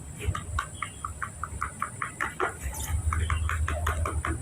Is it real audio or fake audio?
fake